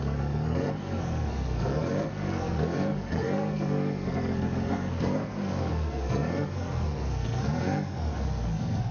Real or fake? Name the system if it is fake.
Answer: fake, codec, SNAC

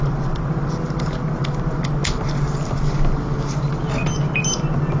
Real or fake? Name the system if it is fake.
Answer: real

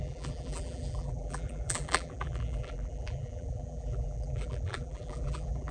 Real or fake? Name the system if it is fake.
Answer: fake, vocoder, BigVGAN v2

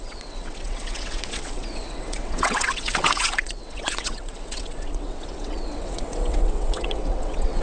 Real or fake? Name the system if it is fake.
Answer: fake, vocoder, WaveNeXt